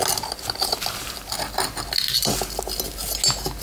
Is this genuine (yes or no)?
yes